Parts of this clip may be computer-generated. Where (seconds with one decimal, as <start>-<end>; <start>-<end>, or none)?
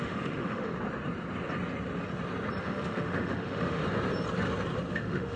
0.0-0.7; 2.6-3.8; 4.9-5.4